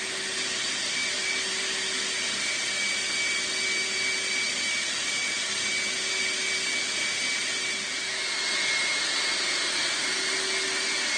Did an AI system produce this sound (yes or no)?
no